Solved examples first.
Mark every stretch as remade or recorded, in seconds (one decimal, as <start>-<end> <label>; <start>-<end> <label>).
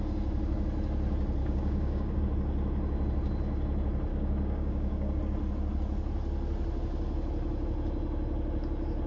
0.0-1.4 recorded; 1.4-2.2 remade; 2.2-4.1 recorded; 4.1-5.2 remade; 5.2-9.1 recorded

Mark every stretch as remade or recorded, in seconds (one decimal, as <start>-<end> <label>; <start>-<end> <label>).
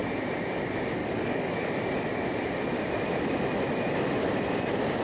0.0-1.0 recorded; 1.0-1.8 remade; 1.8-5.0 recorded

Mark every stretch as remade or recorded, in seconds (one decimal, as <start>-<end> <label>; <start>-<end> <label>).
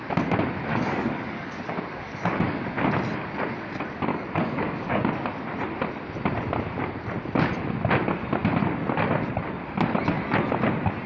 0.0-0.7 recorded; 0.7-2.6 remade; 2.6-4.1 recorded; 4.1-5.0 remade; 5.0-11.1 recorded